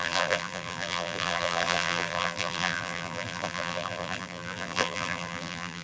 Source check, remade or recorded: remade